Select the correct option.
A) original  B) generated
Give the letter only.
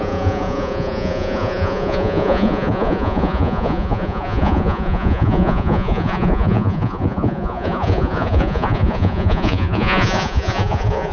B